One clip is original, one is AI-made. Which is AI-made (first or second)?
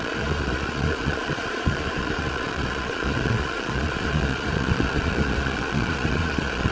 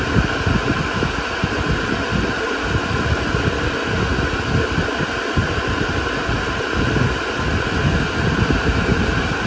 first